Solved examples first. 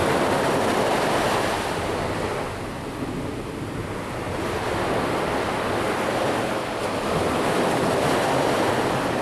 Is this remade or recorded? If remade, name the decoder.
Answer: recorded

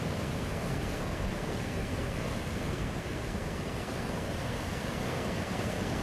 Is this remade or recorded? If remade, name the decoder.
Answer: remade, codec, SNAC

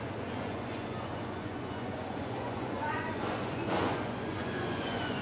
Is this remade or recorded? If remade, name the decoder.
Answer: remade, vocoder, Vocos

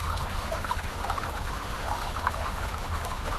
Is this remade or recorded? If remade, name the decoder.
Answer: remade, autoencoder, DAC-VAE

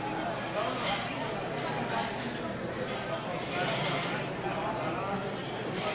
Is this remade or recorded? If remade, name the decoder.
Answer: recorded